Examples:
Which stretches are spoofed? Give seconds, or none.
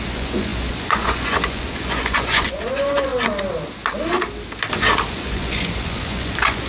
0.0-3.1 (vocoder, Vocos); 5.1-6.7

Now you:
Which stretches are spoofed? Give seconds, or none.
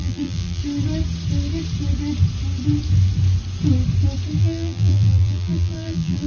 0.0-0.6 (vocoder, BigVGAN v2); 4.4-6.3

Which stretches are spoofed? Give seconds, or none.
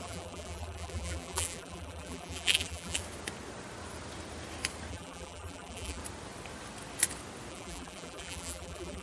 0.0-3.0 (vocoder, BigVGAN v2); 4.9-6.0; 7.5-9.0